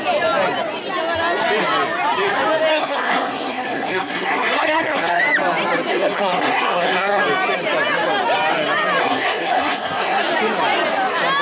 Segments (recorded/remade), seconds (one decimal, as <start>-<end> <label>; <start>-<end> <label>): 0.0-2.7 recorded; 2.7-5.2 remade; 5.2-5.9 recorded; 5.9-7.2 remade; 7.2-9.0 recorded; 9.0-10.2 remade; 10.2-11.4 recorded